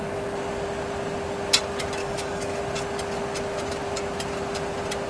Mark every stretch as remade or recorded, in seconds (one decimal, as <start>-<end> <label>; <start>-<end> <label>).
0.0-2.0 recorded; 2.0-2.6 remade; 2.6-5.1 recorded